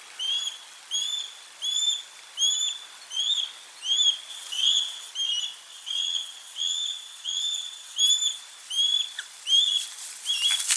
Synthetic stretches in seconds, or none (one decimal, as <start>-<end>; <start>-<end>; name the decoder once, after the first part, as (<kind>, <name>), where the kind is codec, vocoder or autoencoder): 4.3-5.1 (vocoder, WaveNeXt); 5.7-8.0